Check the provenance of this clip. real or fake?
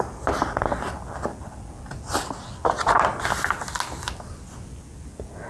real